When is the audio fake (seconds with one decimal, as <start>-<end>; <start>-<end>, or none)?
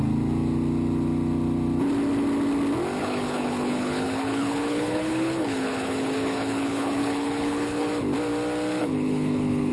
3.0-7.9; 8.8-9.7